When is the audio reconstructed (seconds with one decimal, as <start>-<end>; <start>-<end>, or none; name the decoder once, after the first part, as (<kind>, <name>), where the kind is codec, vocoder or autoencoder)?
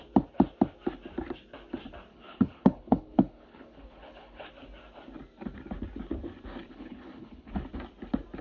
2.1-4.5 (codec, HILCodec); 6.7-7.5